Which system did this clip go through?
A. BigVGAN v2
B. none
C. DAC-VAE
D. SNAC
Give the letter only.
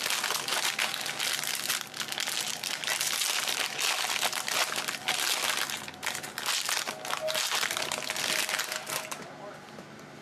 B